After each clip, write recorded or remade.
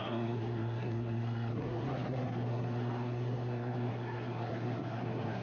remade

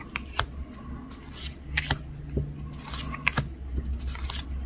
recorded